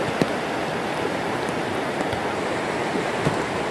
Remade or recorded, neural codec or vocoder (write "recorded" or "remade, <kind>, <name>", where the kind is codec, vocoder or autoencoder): recorded